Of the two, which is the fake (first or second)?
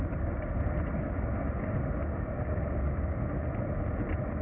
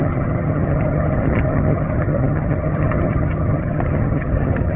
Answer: second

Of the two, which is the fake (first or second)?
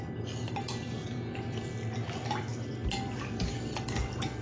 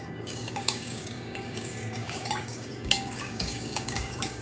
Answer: second